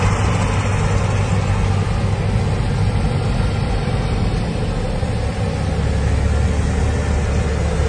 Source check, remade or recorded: recorded